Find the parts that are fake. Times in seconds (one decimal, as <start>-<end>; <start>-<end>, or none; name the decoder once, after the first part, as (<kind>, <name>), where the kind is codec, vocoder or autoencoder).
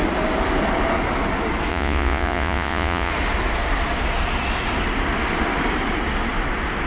1.7-3.1 (vocoder, Vocos)